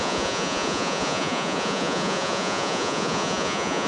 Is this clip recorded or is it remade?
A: remade